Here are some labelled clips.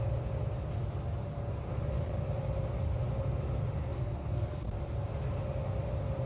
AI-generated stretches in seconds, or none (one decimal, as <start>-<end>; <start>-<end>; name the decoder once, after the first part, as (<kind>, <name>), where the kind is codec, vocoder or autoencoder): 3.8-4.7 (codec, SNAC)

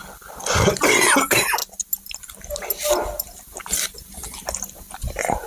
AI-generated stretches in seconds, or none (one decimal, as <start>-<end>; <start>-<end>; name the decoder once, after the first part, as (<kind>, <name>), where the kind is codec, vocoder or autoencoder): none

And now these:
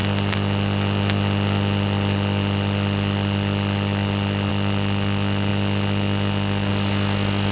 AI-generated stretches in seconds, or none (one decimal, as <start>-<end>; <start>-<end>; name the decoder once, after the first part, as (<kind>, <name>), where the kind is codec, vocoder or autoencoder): none

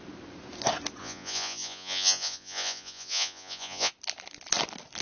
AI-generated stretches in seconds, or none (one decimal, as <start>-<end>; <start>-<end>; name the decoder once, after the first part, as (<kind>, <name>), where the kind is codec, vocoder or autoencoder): 1.0-3.9 (vocoder, Vocos)

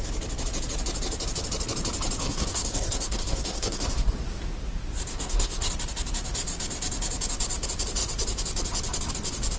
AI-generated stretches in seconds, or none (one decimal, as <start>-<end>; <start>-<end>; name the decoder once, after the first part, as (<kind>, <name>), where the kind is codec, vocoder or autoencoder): 2.2-4.2 (codec, SNAC); 5.1-5.7

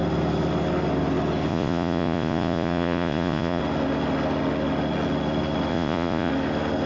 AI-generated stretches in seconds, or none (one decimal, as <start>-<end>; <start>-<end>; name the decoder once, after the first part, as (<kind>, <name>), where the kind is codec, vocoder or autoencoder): 1.5-3.6 (vocoder, Vocos); 5.7-6.3

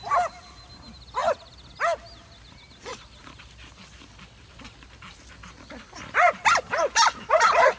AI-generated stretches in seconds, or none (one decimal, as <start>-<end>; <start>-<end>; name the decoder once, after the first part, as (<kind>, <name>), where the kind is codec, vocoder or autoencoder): none

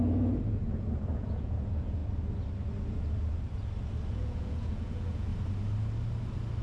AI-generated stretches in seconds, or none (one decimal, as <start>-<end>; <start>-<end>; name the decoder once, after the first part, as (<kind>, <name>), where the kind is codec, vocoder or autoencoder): 0.0-2.0 (vocoder, Vocos); 4.1-5.3